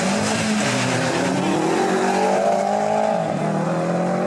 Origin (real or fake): real